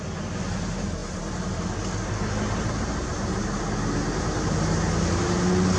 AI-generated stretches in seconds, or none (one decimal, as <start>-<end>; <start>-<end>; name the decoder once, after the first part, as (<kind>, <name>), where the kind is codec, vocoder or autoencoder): none